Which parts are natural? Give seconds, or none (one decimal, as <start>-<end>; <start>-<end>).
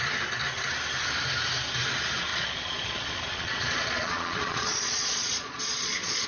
0.0-2.3